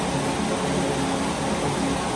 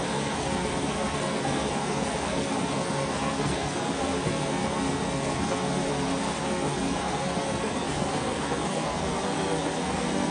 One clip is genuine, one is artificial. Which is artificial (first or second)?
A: second